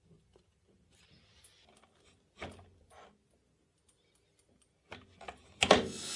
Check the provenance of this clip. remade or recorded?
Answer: recorded